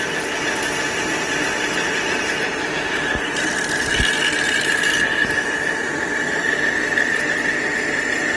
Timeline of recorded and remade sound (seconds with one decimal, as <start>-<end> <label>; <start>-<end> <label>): 0.0-8.4 recorded